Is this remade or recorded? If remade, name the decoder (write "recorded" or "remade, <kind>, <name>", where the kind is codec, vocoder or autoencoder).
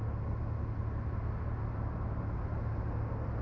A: recorded